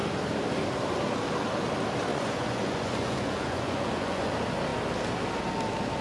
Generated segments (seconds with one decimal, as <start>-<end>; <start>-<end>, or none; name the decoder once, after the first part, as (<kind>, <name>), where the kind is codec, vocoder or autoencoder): 2.1-4.3 (vocoder, Vocos)